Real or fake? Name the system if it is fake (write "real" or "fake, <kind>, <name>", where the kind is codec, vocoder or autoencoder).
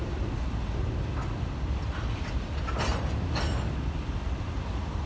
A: real